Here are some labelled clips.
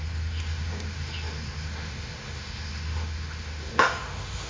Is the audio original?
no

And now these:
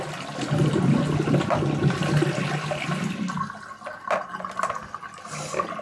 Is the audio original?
yes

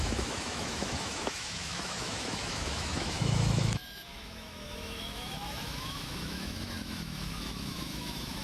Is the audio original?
no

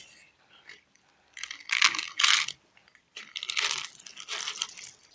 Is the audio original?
yes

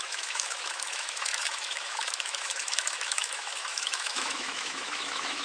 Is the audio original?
no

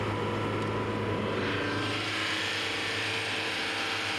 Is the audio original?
yes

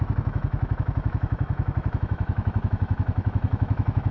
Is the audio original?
no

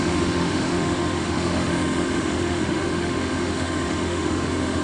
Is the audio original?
no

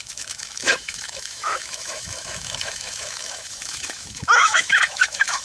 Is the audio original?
no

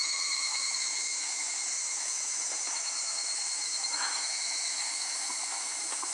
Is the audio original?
no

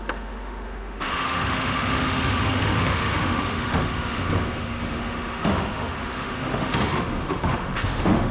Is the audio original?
no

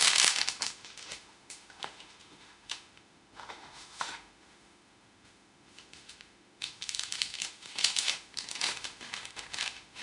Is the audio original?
no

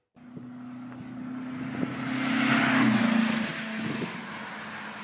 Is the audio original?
yes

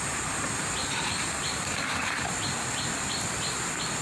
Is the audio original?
yes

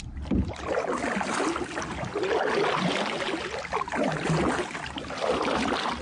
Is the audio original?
yes